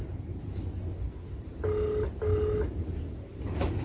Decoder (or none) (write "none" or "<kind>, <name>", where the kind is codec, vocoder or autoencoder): none